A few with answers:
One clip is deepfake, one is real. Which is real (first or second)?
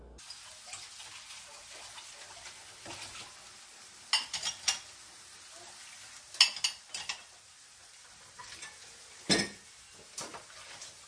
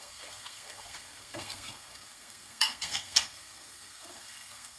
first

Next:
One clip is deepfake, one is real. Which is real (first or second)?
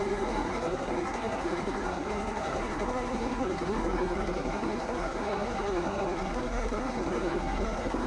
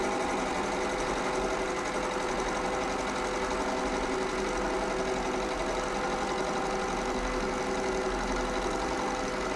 second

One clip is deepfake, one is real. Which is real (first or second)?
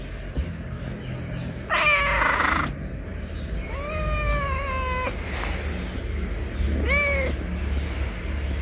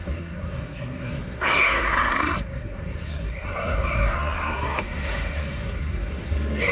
first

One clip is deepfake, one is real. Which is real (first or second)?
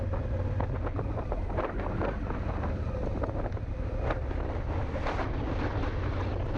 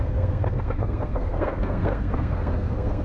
first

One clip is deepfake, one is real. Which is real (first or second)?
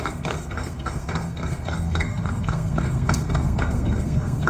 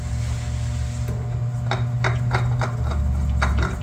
second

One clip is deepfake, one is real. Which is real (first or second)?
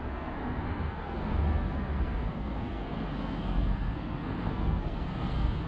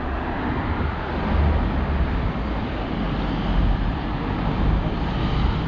second